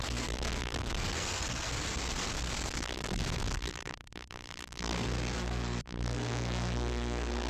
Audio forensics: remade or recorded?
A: remade